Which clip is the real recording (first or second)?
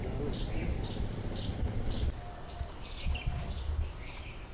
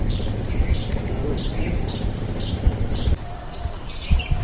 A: first